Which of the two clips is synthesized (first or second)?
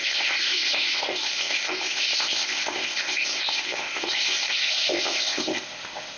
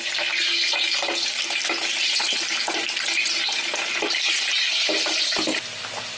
first